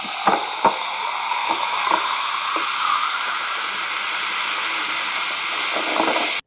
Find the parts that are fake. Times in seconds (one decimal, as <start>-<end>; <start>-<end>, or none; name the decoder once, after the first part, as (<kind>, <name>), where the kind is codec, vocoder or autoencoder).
1.4-2.3 (autoencoder, DAC-VAE); 2.9-3.7